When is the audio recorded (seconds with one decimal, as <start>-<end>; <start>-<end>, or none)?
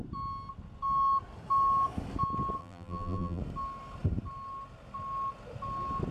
0.0-2.6; 3.4-6.1